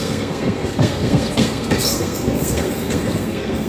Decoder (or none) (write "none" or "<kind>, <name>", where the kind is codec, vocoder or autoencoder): codec, SNAC